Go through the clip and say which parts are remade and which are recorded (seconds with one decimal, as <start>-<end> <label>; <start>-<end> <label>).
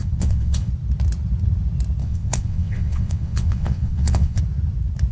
0.0-0.7 remade; 0.7-2.0 recorded; 2.0-4.4 remade; 4.4-5.1 recorded